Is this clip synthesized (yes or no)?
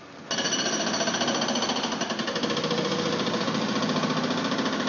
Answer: no